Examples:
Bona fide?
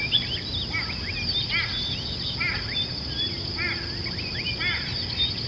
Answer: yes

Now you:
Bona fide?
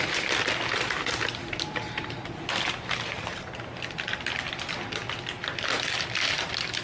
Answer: yes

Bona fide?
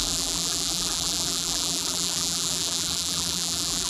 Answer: no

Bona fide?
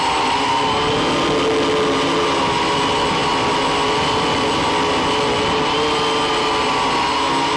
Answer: yes